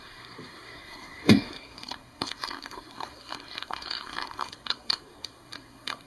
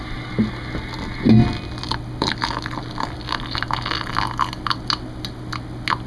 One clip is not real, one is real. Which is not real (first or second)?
first